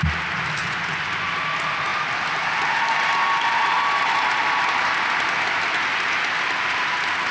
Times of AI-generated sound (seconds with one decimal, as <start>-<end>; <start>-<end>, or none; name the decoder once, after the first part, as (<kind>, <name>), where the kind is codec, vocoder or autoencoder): 0.6-1.3 (vocoder, Vocos)